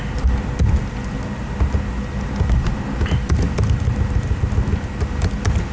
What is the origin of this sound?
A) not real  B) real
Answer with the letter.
B